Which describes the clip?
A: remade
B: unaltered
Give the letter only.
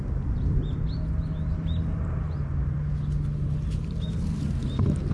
B